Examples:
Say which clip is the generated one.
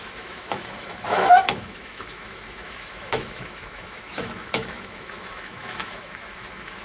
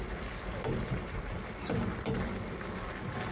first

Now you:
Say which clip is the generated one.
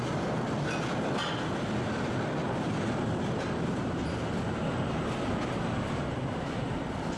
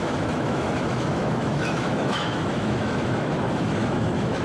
second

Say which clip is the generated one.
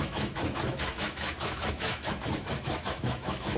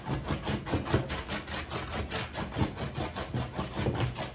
first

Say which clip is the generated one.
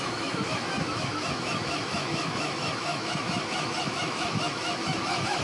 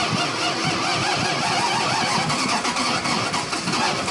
first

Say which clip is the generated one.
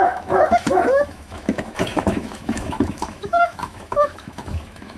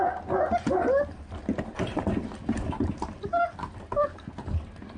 first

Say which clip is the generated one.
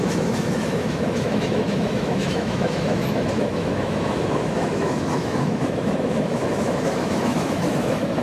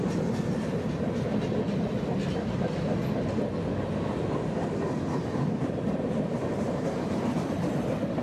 first